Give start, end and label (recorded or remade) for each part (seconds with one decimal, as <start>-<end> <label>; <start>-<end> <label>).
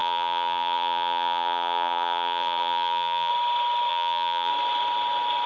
0.0-3.3 remade; 3.3-3.9 recorded; 3.9-4.5 remade; 4.5-5.5 recorded